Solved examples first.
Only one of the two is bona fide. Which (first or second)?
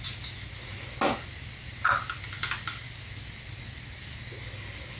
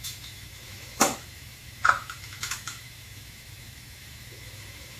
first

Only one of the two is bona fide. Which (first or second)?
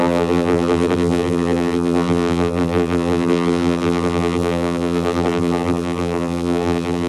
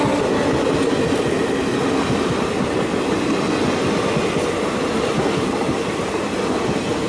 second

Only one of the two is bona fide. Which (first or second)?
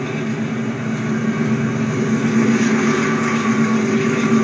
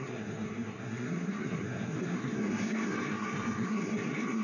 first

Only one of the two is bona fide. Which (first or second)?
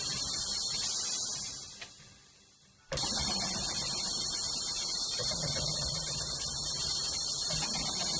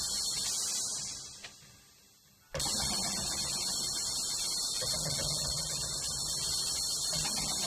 second